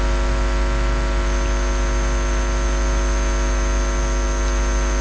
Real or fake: real